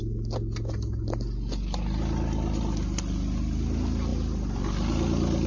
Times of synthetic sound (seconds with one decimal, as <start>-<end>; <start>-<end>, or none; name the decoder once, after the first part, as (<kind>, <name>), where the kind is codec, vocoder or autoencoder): none